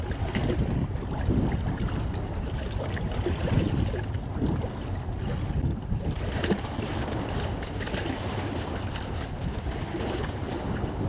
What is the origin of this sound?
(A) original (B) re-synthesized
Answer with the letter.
A